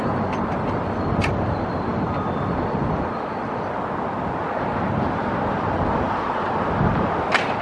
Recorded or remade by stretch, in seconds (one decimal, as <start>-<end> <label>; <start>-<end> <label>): 0.0-7.6 recorded